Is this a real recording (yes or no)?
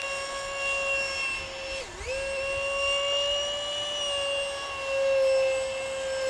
yes